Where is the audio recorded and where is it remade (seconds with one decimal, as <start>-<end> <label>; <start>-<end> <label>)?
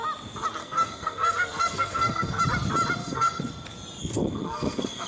0.0-0.6 recorded; 0.6-2.4 remade; 2.4-3.0 recorded; 3.0-3.5 remade; 3.5-4.0 recorded; 4.0-5.1 remade